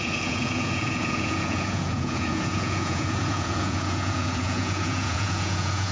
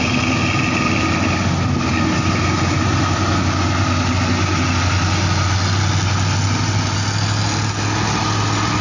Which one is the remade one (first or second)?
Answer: first